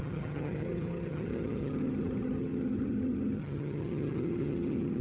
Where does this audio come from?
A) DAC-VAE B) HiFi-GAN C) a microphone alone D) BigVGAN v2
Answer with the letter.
B